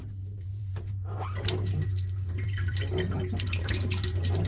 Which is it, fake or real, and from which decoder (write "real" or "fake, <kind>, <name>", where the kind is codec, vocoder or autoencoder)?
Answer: fake, vocoder, BigVGAN v2